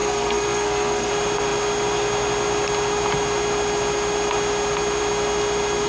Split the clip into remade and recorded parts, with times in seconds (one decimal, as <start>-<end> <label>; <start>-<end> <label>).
0.0-1.1 remade; 1.1-5.9 recorded